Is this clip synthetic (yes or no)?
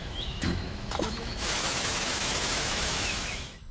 yes